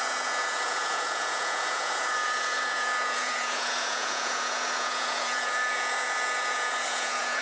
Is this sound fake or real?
fake